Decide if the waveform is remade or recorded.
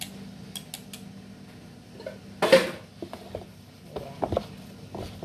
recorded